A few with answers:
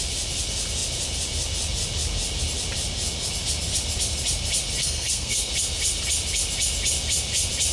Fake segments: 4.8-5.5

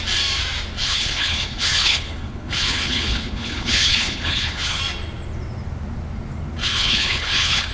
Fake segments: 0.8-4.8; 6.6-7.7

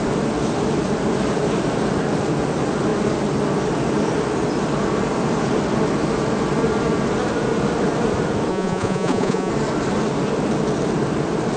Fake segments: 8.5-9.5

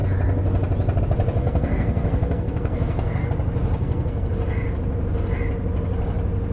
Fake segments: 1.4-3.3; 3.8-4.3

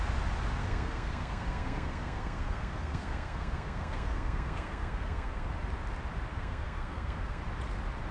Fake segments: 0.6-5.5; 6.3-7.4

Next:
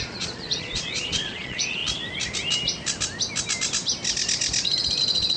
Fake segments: 0.0-1.8; 5.0-5.4

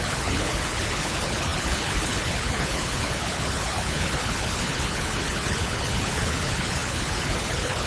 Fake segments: 0.0-7.9

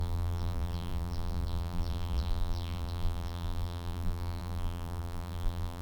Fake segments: 0.0-5.8